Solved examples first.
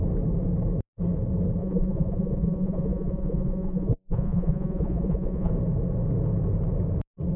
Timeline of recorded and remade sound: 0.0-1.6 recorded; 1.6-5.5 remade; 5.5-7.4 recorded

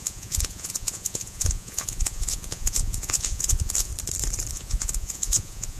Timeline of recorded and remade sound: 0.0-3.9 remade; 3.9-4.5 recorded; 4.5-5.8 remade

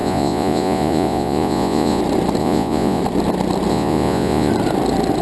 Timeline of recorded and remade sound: 0.0-2.0 remade; 2.0-2.4 recorded; 2.4-3.0 remade; 3.0-3.7 recorded; 3.7-4.5 remade; 4.5-5.2 recorded

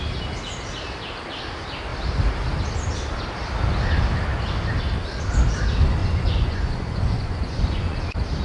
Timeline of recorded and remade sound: 0.0-6.0 recorded; 6.0-8.0 remade; 8.0-8.4 recorded

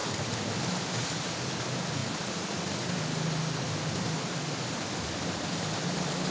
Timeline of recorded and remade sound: 0.0-6.3 recorded

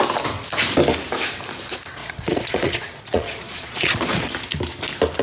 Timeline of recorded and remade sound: 0.0-2.0 recorded; 2.0-4.3 remade; 4.3-5.2 recorded

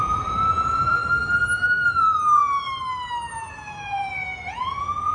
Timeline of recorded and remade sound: 0.0-1.0 remade; 1.0-2.0 recorded; 2.0-2.7 remade; 2.7-3.3 recorded; 3.3-5.1 remade